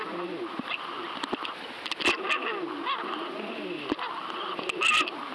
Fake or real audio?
real